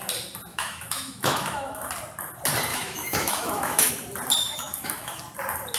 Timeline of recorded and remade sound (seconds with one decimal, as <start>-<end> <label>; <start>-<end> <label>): 0.0-0.5 recorded; 0.5-1.9 remade; 1.9-2.7 recorded; 2.7-3.9 remade; 3.9-4.4 recorded; 4.4-5.2 remade; 5.2-5.8 recorded